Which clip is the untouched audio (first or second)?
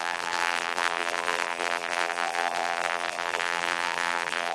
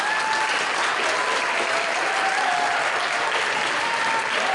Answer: second